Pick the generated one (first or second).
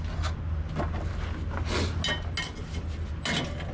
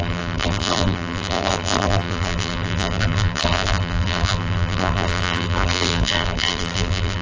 second